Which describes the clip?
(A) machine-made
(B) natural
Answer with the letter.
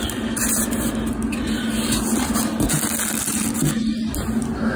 B